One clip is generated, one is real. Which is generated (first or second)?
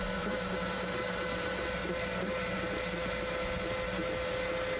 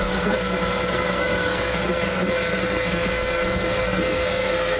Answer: second